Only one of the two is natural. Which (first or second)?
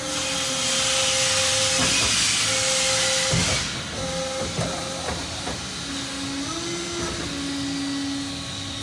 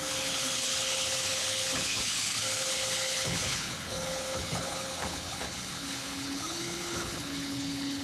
first